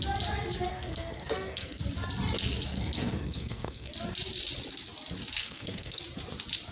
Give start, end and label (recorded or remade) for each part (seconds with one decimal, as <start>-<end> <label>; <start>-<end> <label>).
0.0-0.7 recorded; 0.7-1.8 remade; 1.8-2.7 recorded; 2.7-3.9 remade; 3.9-5.4 recorded; 5.4-6.0 remade; 6.0-6.7 recorded